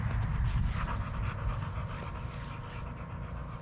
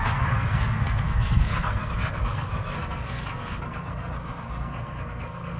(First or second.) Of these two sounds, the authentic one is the first